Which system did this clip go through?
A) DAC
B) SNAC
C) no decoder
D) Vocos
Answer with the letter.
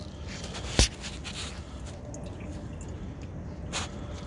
C